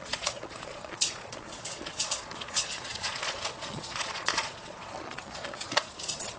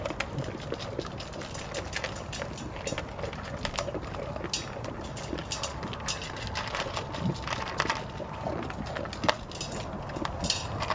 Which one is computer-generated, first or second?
first